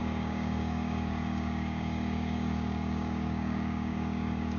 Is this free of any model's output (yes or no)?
no